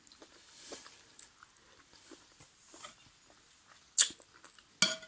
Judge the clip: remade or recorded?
recorded